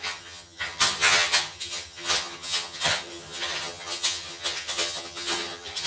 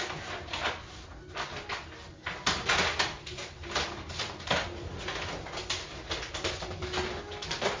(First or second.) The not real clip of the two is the first